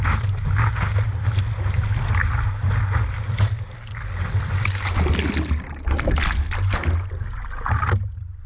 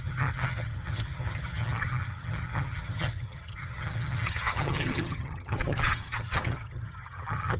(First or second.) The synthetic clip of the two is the second